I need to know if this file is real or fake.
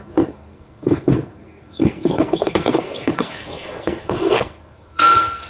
fake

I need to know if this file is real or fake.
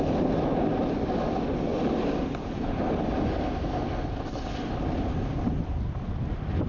real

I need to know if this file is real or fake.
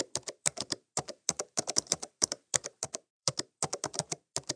fake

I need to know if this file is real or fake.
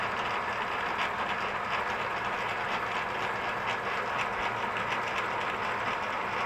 real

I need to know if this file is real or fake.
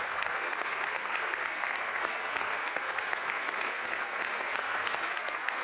fake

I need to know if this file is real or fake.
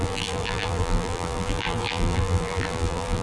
fake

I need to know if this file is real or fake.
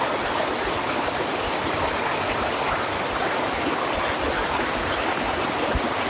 real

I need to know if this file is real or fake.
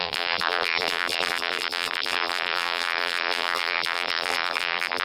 fake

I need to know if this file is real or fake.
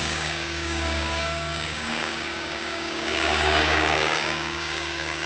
fake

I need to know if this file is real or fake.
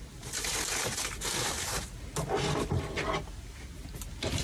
real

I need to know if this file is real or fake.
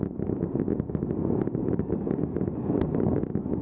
real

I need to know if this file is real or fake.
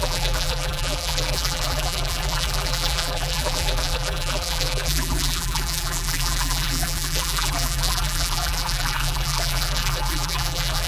fake